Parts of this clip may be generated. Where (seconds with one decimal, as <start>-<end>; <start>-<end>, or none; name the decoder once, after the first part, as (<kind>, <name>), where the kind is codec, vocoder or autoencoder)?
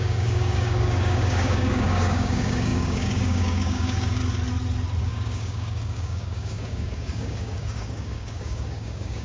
0.0-4.2 (codec, DAC); 5.0-9.2